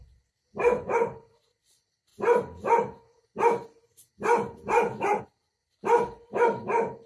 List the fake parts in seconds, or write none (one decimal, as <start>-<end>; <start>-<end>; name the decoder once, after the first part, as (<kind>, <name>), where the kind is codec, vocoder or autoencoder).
0.0-2.1 (vocoder, BigVGAN v2); 5.2-7.1